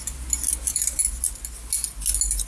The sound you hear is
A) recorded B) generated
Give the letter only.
A